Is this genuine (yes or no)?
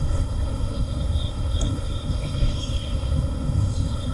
no